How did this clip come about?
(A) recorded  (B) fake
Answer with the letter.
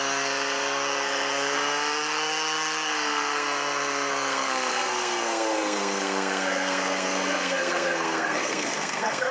B